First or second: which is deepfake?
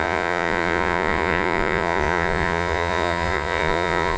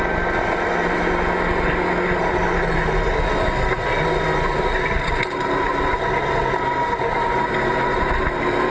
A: first